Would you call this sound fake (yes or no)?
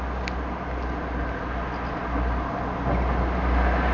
no